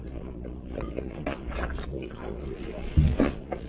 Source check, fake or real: fake